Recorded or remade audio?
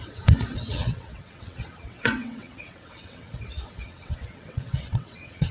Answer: remade